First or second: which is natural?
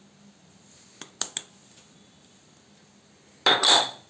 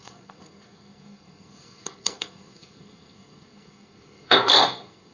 first